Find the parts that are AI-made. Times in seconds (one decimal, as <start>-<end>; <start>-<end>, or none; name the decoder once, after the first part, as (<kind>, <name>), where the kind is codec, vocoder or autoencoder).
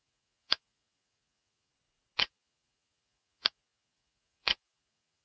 0.0-1.7 (vocoder, Vocos); 2.2-5.2